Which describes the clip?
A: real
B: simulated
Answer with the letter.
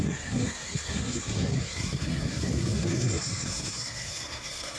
B